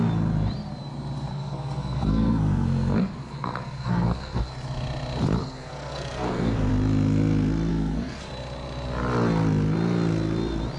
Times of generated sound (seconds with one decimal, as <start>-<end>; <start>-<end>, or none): 1.3-4.5; 5.4-6.7; 7.7-8.3